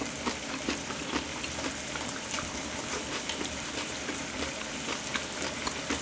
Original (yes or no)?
no